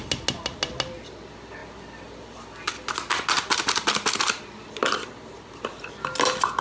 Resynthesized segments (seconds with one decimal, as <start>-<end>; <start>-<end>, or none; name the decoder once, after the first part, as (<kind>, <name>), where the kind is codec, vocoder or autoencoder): none

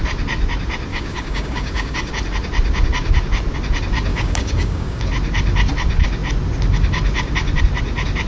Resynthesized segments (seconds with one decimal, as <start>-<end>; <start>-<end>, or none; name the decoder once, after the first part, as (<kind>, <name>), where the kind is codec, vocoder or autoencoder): 0.9-2.1 (codec, DAC); 4.1-5.0